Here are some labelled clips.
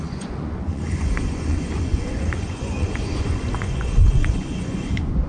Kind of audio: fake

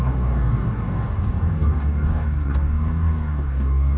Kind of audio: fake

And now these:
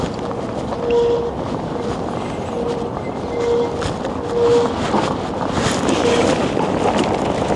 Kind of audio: real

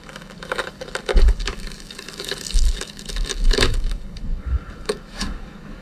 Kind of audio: fake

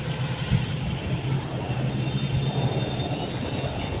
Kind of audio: real